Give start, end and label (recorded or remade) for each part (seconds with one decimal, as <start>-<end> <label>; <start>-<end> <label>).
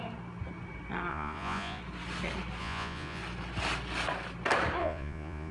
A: 0.0-1.1 recorded; 1.1-1.8 remade; 1.8-2.6 recorded; 2.6-3.2 remade; 3.2-4.8 recorded; 4.8-5.5 remade